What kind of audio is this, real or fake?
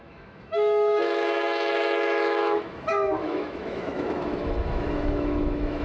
fake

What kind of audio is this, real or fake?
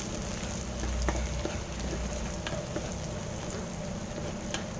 real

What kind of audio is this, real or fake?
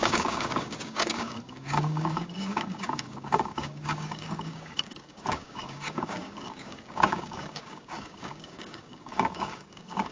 fake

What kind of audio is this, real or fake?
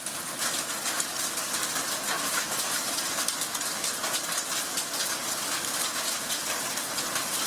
real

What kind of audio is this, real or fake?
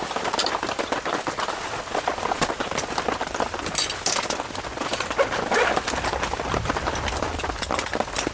real